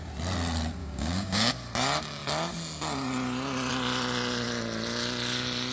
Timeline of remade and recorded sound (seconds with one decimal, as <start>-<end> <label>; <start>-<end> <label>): 0.0-0.8 recorded; 0.8-1.5 remade; 1.5-5.7 recorded